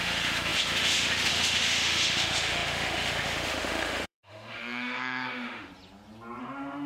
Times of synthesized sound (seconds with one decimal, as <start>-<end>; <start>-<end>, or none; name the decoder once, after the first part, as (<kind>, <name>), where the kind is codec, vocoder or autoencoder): 0.0-5.7 (autoencoder, DAC-VAE); 6.4-6.9